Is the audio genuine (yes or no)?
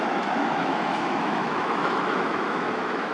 no